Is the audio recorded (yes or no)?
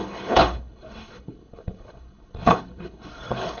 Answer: no